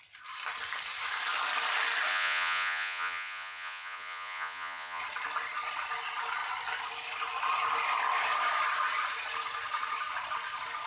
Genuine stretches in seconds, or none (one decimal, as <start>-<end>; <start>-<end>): 0.0-2.1; 5.0-10.9